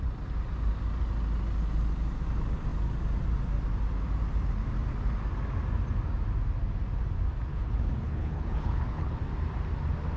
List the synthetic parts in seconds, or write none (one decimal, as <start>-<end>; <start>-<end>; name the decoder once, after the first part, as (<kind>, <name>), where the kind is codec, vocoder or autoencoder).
7.5-9.2 (codec, HILCodec)